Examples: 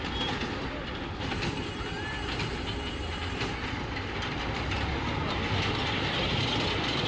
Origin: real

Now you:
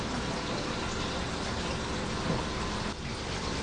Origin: real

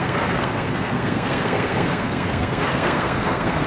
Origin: fake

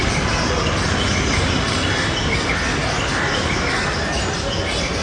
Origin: real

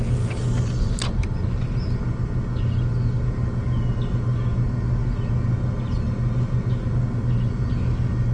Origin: real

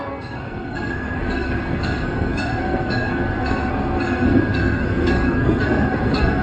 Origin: fake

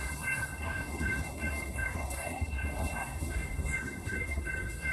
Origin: fake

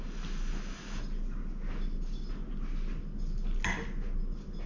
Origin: real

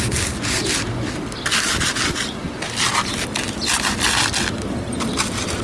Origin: real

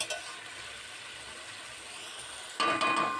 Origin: real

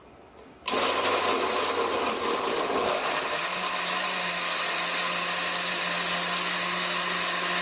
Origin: real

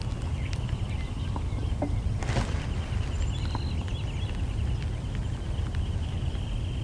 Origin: real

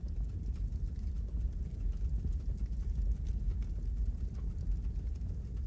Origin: real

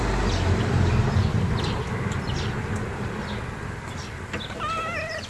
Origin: real